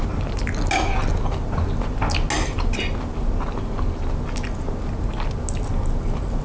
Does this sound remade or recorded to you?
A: recorded